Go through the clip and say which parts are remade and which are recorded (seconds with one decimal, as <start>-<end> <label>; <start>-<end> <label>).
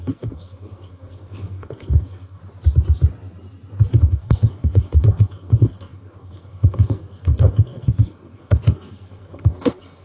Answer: 0.0-2.4 remade; 2.4-4.0 recorded; 4.0-10.0 remade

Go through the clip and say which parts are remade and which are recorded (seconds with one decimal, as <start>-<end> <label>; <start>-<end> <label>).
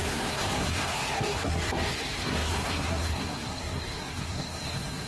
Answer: 0.0-5.1 remade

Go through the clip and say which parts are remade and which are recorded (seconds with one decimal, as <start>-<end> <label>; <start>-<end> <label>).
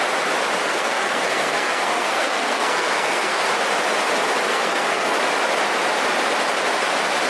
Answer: 0.0-0.6 recorded; 0.6-3.5 remade; 3.5-4.5 recorded; 4.5-5.2 remade; 5.2-7.3 recorded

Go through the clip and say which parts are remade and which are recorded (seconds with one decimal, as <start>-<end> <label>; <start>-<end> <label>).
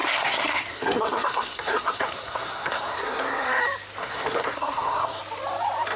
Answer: 0.0-3.6 remade; 3.6-4.0 recorded; 4.0-5.2 remade; 5.2-6.0 recorded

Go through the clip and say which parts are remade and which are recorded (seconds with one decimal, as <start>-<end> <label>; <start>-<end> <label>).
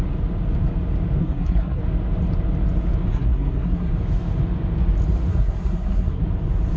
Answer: 0.0-1.2 recorded; 1.2-1.8 remade; 1.8-3.1 recorded; 3.1-3.9 remade; 3.9-5.3 recorded; 5.3-6.2 remade; 6.2-6.8 recorded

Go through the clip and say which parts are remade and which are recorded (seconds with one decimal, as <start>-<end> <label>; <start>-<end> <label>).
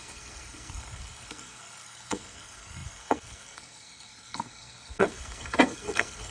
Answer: 0.0-6.3 remade